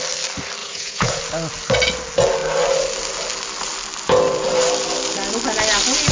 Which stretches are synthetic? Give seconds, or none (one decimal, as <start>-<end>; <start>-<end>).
0.6-1.2